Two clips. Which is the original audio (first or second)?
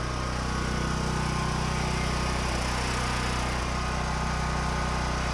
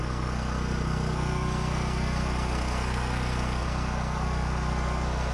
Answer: first